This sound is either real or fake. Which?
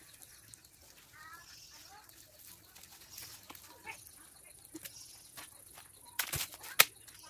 real